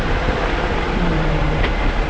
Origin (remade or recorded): recorded